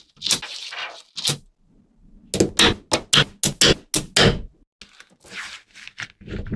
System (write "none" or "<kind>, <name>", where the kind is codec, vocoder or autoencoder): none